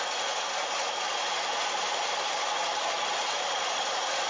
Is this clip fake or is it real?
real